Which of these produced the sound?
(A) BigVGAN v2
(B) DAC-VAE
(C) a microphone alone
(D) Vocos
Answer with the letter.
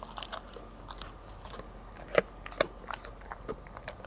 C